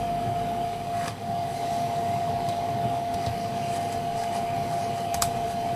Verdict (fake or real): fake